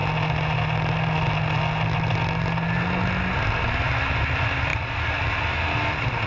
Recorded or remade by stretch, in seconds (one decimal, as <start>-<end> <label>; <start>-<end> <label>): 0.0-6.3 recorded